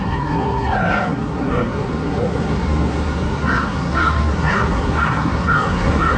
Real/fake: fake